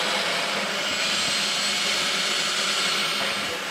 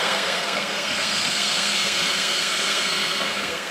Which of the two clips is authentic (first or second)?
first